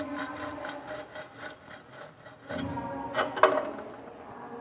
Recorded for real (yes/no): no